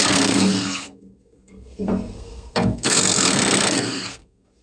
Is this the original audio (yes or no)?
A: no